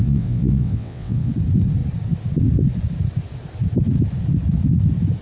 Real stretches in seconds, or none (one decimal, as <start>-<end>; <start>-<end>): 1.3-5.2